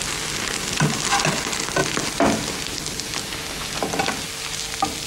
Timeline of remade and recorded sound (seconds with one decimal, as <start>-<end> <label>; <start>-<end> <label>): 0.0-5.1 recorded

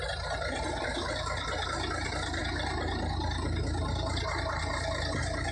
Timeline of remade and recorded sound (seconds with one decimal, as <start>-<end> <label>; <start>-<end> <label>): 0.0-5.5 recorded

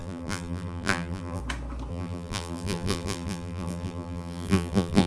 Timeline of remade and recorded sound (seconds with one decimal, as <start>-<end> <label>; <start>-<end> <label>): 0.0-1.4 remade; 1.4-1.9 recorded; 1.9-5.1 remade

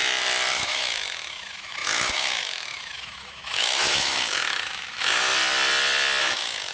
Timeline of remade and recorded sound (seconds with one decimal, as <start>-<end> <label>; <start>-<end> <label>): 0.0-0.5 recorded; 0.5-5.3 remade; 5.3-6.2 recorded; 6.2-6.7 remade

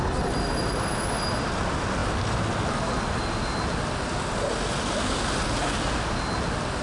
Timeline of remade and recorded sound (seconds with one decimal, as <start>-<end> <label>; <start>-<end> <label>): 0.0-6.8 recorded

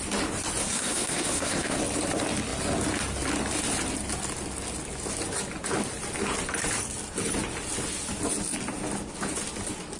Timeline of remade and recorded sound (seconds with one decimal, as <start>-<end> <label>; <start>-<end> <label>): 0.0-0.6 recorded; 0.6-1.8 remade; 1.8-10.0 recorded

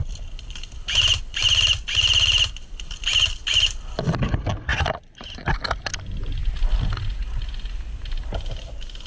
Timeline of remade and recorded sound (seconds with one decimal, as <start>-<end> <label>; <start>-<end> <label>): 0.0-9.1 recorded